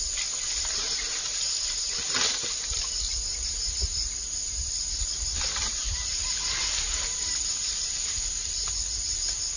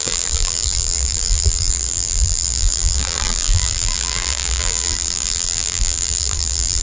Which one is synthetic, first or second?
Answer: second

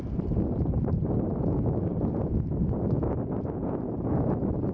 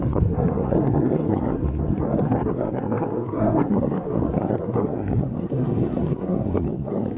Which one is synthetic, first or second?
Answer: second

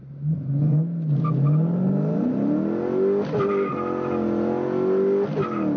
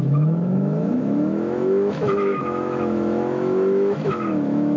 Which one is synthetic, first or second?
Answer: second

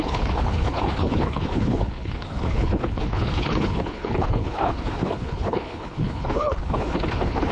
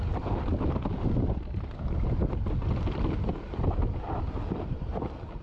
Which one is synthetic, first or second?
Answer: first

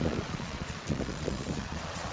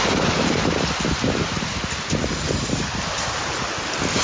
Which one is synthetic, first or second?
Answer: first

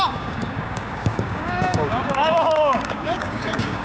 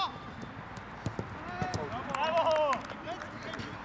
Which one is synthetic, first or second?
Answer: first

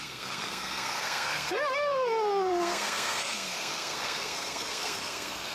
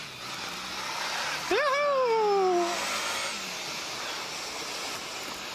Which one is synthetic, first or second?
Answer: first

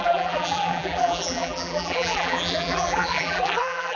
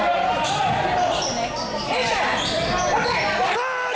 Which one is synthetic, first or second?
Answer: first